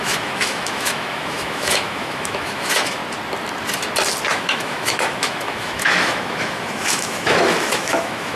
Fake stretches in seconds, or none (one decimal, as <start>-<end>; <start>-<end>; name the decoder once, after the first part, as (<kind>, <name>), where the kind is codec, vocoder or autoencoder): 0.0-3.0 (autoencoder, DAC-VAE); 4.3-8.4